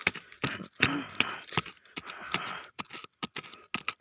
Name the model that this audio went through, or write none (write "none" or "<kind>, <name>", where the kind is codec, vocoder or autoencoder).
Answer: none